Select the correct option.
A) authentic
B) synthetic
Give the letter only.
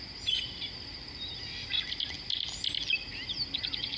A